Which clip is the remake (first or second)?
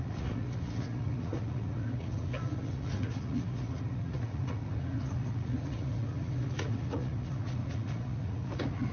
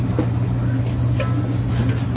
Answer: first